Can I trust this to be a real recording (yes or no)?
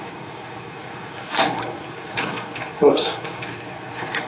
no